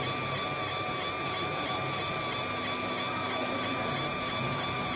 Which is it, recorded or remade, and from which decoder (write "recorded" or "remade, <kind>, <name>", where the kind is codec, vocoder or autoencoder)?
recorded